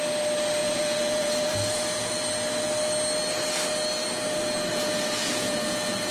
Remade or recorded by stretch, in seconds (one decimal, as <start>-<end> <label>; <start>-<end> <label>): 0.0-0.6 recorded; 0.6-2.1 remade; 2.1-4.7 recorded; 4.7-6.1 remade